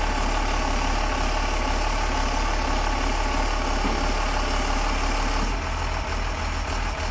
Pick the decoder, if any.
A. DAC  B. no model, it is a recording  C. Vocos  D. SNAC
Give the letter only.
B